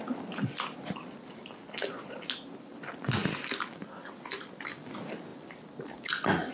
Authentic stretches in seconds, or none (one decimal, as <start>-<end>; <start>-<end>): 0.0-6.5